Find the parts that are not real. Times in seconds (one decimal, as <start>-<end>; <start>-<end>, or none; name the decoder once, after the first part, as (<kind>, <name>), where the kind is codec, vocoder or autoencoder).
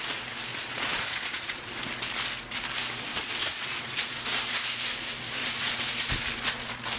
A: 0.5-1.7 (vocoder, Vocos); 3.1-4.2; 5.4-5.9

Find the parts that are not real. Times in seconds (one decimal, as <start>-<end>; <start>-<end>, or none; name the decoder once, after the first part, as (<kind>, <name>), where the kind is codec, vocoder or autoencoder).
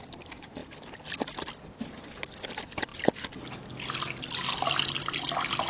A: none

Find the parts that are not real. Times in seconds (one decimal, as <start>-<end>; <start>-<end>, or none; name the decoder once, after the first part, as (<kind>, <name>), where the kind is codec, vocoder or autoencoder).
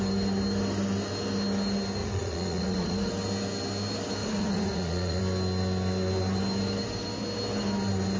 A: 2.0-3.1 (vocoder, Vocos); 4.2-5.2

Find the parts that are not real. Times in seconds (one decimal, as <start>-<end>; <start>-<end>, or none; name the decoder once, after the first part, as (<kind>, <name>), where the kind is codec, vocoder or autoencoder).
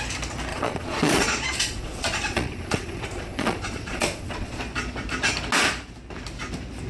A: 0.5-4.6 (vocoder, Vocos)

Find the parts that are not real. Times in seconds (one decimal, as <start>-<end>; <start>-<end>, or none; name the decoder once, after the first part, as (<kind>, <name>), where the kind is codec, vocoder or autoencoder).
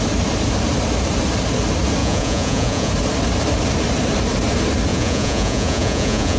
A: 2.0-2.9 (vocoder, Vocos); 4.9-6.4